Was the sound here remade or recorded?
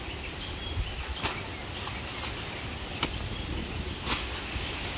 recorded